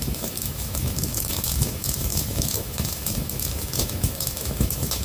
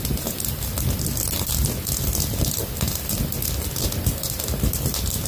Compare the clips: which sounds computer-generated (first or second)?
first